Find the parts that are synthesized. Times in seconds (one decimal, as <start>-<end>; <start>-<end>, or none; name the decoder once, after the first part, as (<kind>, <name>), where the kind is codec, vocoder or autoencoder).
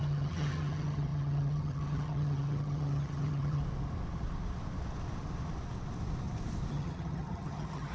0.0-3.6 (vocoder, HiFi-GAN); 6.7-7.9